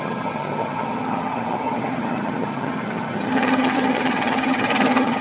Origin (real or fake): fake